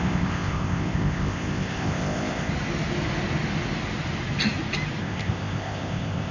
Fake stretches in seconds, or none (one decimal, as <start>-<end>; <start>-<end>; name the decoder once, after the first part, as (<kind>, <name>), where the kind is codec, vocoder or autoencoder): 0.0-2.5 (codec, ZipCodec); 5.0-6.3